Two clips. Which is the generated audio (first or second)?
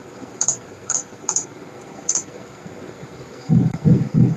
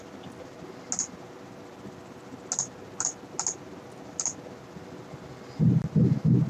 first